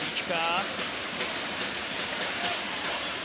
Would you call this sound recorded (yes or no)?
yes